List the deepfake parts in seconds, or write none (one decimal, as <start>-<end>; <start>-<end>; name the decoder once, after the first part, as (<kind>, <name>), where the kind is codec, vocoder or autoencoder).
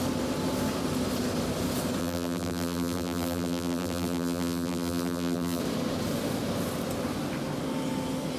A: 2.0-5.6 (vocoder, BigVGAN v2)